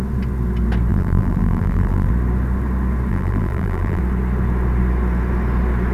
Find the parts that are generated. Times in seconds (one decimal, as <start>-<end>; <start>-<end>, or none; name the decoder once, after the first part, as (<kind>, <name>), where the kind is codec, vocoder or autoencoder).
0.9-2.1 (vocoder, BigVGAN v2); 3.1-4.0